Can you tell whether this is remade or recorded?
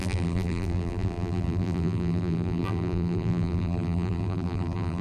remade